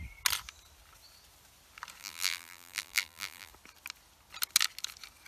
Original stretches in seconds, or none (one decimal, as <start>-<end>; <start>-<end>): 0.0-2.0; 3.5-5.3